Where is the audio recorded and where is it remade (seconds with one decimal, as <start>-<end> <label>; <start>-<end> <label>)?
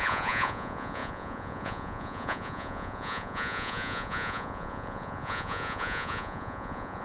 0.0-7.0 remade